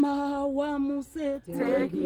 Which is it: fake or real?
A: real